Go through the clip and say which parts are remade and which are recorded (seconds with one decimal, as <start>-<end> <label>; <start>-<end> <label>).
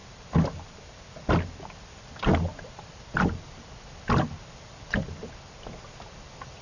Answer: 0.0-6.6 recorded